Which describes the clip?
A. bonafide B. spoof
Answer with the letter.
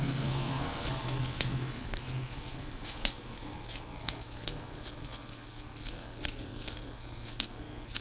B